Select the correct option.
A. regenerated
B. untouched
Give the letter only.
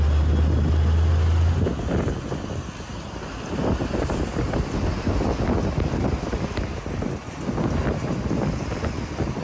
B